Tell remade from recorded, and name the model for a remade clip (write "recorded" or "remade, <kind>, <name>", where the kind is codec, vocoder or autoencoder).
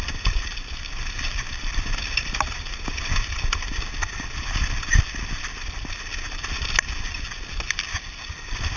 recorded